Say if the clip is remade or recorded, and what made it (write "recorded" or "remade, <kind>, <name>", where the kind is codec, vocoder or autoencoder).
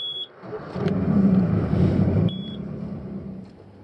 remade, vocoder, BigVGAN v2